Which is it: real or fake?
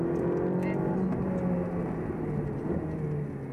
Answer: real